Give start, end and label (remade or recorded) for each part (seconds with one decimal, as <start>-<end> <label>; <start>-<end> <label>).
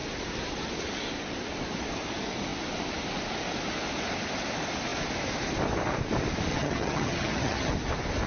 0.0-6.5 recorded; 6.5-7.7 remade; 7.7-8.3 recorded